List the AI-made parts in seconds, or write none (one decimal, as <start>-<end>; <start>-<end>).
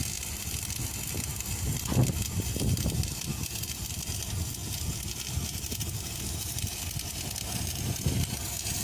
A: none